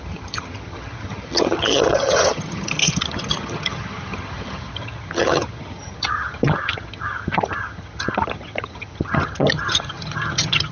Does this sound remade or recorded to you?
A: remade